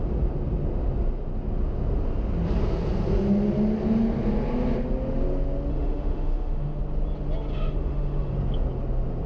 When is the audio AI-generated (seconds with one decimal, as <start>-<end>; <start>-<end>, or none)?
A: 5.7-6.8; 7.5-8.3